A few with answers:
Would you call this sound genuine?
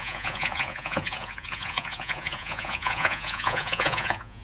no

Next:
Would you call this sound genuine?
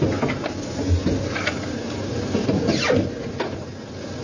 yes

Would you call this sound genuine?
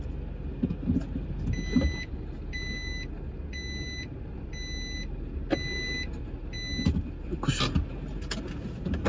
yes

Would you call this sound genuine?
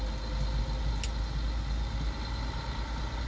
yes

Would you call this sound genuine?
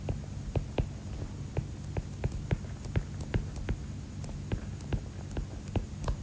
yes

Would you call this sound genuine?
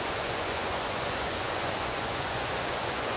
no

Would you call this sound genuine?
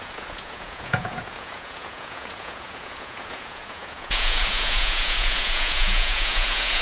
no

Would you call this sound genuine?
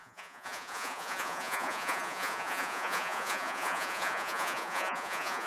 no